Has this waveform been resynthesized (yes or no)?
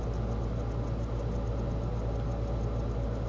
no